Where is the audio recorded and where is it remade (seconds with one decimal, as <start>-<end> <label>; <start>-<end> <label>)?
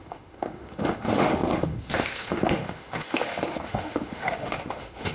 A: 0.0-5.1 remade